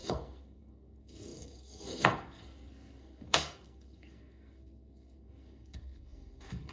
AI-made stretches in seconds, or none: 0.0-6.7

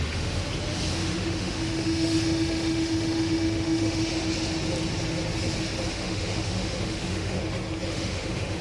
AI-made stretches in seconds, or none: 0.0-0.4; 0.9-4.1; 5.9-7.4; 7.9-8.6

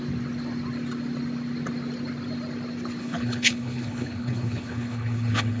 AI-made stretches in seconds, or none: 3.0-5.6

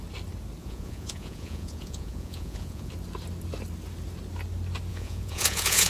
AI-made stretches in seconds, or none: 0.6-2.9; 4.9-5.9

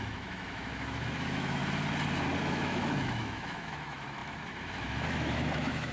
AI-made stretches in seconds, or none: 0.0-1.6; 2.4-5.9